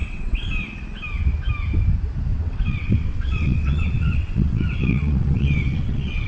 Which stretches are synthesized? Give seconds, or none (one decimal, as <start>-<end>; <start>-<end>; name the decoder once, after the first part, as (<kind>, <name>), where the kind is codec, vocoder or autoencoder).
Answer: 0.0-0.5 (vocoder, WaveNeXt); 2.3-6.3